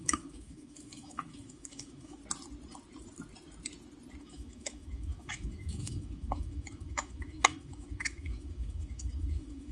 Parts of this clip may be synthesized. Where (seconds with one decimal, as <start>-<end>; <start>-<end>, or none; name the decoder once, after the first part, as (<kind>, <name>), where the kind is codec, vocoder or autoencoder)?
0.0-2.2 (autoencoder, DAC-VAE); 4.2-9.7